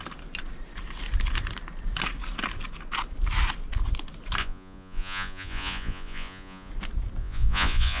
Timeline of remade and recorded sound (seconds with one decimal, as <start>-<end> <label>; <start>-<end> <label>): 0.0-4.4 recorded; 4.4-6.7 remade; 6.7-7.2 recorded; 7.2-8.0 remade